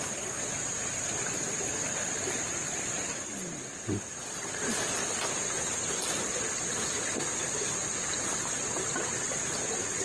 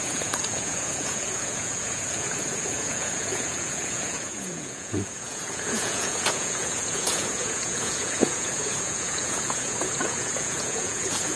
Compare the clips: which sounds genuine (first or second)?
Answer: first